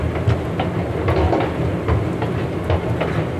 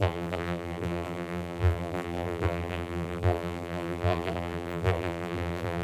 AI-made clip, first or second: second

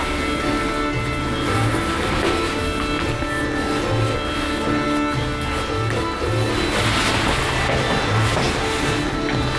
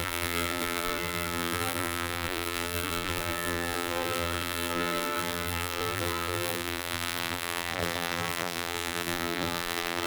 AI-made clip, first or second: second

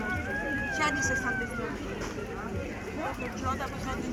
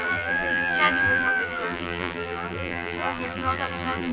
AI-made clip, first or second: second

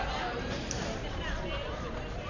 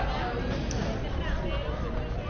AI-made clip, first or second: first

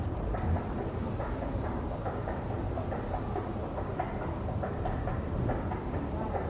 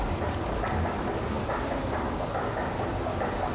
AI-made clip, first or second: first